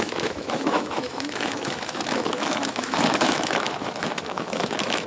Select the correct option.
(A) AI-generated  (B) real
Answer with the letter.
A